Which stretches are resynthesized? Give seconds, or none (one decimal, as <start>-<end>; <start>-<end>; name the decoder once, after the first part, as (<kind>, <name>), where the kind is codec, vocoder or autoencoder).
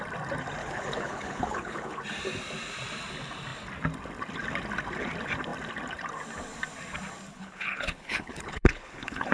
0.6-2.0 (codec, HILCodec); 7.3-9.3